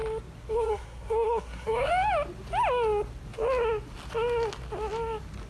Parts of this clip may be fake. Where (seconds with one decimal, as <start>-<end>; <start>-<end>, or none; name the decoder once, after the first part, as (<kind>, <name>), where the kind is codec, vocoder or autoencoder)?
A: 0.5-1.9 (codec, SNAC)